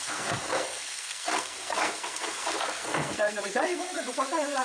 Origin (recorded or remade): remade